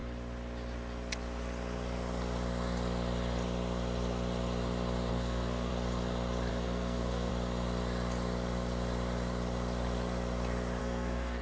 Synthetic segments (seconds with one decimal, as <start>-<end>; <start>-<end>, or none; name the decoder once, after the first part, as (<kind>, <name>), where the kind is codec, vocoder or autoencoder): 5.1-5.7 (codec, SNAC); 6.5-7.3; 10.8-11.4

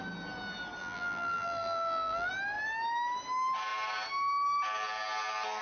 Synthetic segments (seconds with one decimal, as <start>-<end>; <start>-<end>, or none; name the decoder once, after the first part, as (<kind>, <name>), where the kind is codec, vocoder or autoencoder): 0.8-2.3 (vocoder, BigVGAN v2)

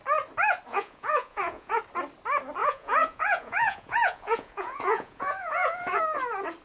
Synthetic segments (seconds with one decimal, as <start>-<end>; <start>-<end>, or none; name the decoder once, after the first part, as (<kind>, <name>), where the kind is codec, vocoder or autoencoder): 0.7-1.8 (vocoder, Vocos); 2.6-6.0

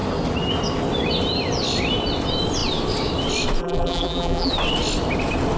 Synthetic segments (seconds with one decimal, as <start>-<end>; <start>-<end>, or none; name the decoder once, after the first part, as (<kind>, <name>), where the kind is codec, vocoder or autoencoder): 3.6-4.5 (vocoder, BigVGAN v2)

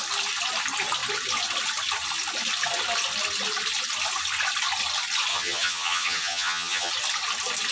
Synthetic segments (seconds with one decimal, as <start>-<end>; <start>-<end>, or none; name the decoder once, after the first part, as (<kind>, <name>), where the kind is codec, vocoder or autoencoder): 5.3-6.9 (vocoder, HiFi-GAN)

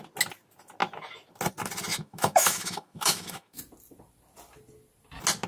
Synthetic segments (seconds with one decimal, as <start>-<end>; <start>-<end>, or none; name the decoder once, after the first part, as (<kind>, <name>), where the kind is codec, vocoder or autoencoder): 1.9-3.6 (autoencoder, DAC-VAE)